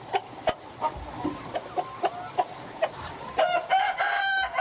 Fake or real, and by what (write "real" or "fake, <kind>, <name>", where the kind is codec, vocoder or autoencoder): real